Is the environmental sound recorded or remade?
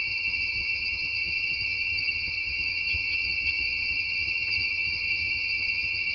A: remade